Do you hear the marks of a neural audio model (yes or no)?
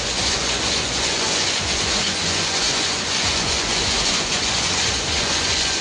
yes